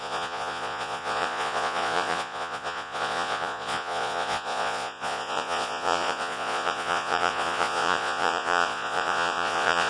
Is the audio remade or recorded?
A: remade